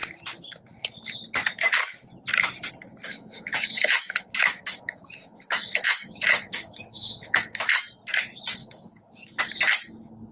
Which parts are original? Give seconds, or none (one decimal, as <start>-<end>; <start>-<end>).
0.0-3.1; 7.8-8.6; 9.4-10.3